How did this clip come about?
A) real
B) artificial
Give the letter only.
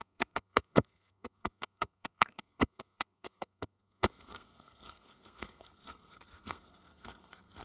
B